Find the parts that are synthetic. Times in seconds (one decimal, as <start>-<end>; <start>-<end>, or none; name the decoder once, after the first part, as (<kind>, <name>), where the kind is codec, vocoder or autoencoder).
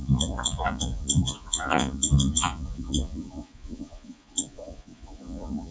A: 0.0-5.7 (vocoder, Vocos)